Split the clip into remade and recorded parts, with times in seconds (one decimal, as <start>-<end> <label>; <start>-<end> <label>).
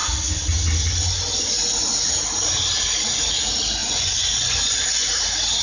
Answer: 0.0-3.8 recorded; 3.8-5.1 remade; 5.1-5.6 recorded